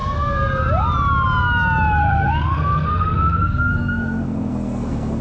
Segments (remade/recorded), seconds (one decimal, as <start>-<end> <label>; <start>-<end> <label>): 0.0-2.0 recorded; 2.0-5.2 remade